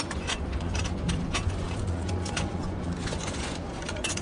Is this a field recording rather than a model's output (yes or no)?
no